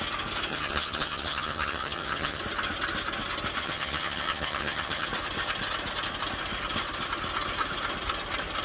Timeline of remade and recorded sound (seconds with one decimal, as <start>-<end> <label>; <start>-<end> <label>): 0.0-0.5 recorded; 0.5-2.4 remade; 2.4-3.6 recorded; 3.6-5.1 remade; 5.1-8.6 recorded